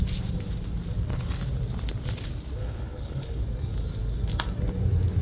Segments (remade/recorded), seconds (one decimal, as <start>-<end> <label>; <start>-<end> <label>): 0.0-2.6 recorded; 2.6-3.4 remade; 3.4-5.2 recorded